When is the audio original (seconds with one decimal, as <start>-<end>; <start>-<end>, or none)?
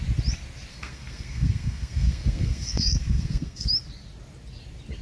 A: 0.0-0.7; 3.7-5.0